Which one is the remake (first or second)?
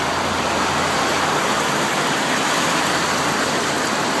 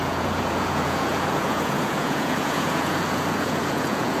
second